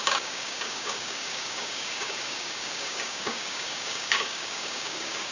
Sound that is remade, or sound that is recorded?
remade